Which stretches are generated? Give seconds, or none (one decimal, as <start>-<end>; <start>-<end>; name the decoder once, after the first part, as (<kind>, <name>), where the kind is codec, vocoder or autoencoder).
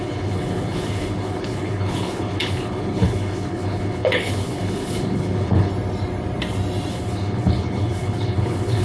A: 0.0-5.7 (codec, HILCodec); 6.9-8.8